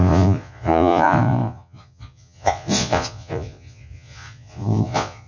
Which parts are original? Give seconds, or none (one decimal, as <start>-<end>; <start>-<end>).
none